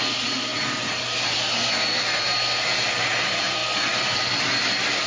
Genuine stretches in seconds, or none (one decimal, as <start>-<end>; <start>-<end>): 0.0-5.1